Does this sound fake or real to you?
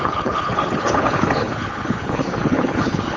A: fake